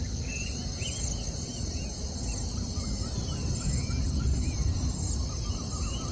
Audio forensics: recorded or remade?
recorded